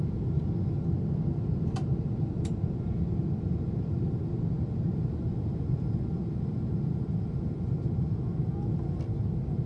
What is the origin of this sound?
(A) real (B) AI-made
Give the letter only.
A